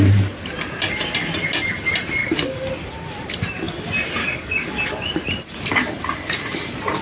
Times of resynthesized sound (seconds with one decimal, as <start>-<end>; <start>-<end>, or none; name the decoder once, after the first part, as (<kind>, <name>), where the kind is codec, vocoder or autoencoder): 2.2-2.7 (codec, DAC); 4.2-4.9